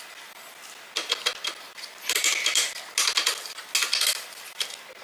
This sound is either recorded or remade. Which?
recorded